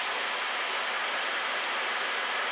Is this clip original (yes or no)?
no